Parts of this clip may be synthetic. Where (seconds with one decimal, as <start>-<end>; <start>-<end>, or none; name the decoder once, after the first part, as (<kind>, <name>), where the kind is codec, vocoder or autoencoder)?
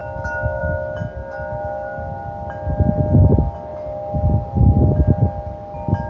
none